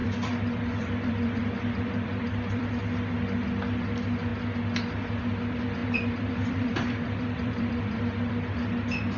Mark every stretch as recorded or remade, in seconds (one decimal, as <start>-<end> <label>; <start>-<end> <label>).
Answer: 0.0-2.8 remade; 2.8-5.8 recorded; 5.8-8.5 remade; 8.5-9.2 recorded